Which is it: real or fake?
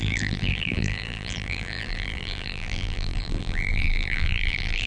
fake